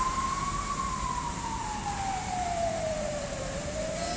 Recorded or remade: remade